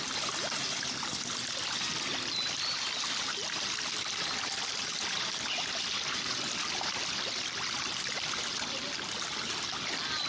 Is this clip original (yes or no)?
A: yes